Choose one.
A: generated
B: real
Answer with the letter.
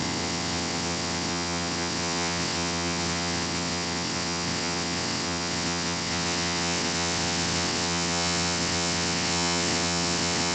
A